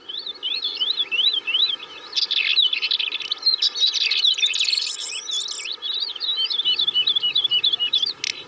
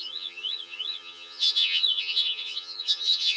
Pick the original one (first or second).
first